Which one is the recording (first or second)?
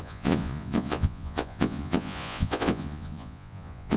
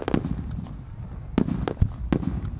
second